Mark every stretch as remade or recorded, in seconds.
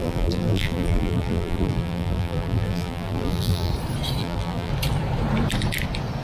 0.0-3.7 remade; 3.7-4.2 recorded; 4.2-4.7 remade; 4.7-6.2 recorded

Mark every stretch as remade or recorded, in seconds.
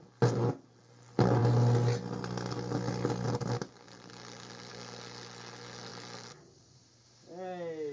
0.0-5.9 recorded; 5.9-6.9 remade; 6.9-7.9 recorded